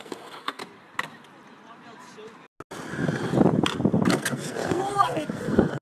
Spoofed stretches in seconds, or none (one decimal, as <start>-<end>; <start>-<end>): 0.0-0.6; 4.1-5.8